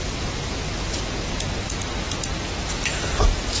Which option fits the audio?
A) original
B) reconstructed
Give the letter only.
A